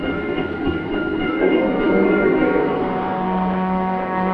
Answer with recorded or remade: remade